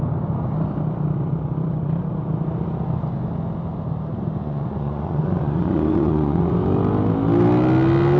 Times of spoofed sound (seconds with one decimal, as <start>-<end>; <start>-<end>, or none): 4.4-6.5